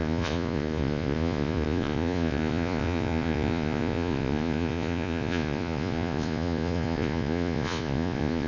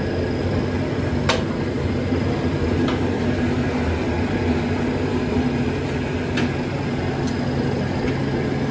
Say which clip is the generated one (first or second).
first